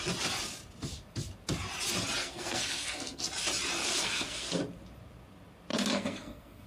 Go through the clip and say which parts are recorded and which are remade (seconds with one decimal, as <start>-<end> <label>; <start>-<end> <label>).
0.0-2.2 recorded; 2.2-3.2 remade; 3.2-3.8 recorded; 3.8-4.6 remade; 4.6-5.7 recorded; 5.7-6.7 remade